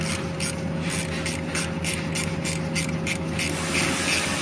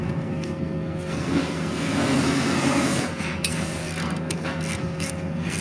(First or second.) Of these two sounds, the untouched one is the first